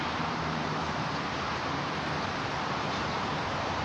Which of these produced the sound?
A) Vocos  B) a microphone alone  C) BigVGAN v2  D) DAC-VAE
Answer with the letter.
C